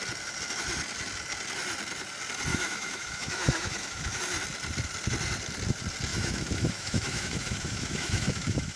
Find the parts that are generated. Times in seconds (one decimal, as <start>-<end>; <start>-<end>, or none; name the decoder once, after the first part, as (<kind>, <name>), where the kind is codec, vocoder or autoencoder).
2.5-4.2 (autoencoder, DAC-VAE); 6.1-8.8